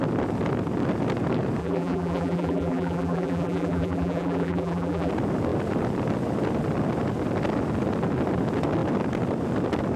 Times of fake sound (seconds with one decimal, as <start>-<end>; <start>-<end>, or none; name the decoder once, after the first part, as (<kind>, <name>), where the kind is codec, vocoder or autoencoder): 1.6-5.1 (vocoder, BigVGAN v2)